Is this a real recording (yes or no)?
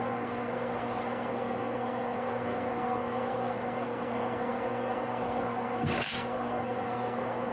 no